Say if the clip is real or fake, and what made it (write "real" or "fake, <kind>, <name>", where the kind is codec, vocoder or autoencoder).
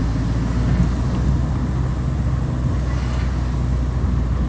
real